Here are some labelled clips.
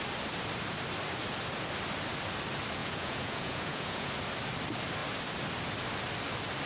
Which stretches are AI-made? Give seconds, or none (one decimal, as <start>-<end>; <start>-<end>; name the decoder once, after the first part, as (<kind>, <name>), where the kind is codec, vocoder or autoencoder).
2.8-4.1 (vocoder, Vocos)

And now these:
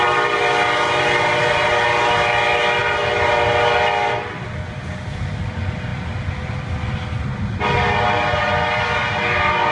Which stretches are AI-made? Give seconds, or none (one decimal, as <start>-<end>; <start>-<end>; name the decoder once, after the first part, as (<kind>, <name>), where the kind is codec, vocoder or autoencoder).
none

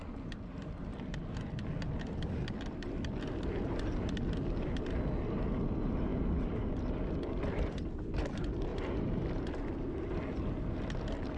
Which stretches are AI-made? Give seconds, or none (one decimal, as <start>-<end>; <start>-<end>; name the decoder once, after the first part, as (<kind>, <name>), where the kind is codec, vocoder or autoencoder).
none

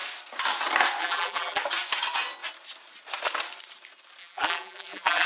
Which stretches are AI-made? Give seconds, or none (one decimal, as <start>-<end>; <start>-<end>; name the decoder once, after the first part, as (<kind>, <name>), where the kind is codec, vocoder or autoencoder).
1.0-1.6 (vocoder, BigVGAN v2); 4.2-5.3

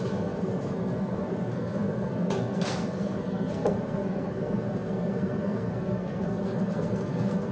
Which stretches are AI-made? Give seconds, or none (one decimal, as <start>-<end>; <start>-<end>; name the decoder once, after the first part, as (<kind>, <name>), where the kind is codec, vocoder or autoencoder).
0.0-7.5 (codec, SNAC)

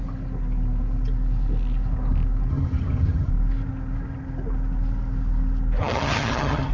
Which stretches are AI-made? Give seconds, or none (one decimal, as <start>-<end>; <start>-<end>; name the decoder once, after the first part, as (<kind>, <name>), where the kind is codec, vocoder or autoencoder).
2.5-3.3 (vocoder, HiFi-GAN); 5.8-6.7